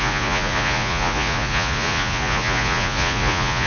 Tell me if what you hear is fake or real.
fake